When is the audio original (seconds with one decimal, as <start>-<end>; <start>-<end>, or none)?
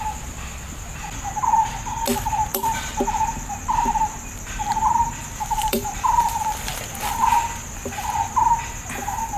0.0-2.5; 6.4-9.4